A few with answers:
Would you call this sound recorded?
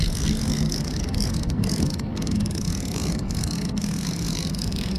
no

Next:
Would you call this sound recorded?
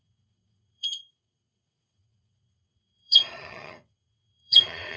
no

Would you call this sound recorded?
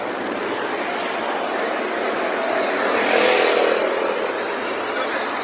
yes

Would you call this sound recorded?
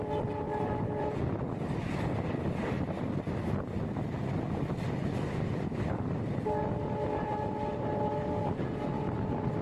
yes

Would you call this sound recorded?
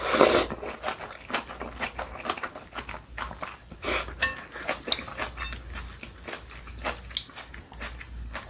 yes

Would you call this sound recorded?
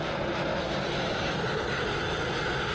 yes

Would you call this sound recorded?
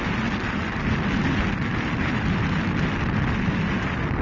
no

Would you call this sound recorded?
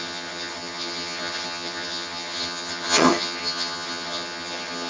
no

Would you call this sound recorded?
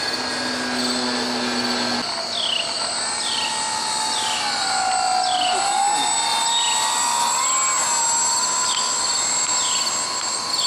yes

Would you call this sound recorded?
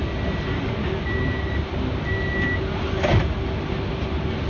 yes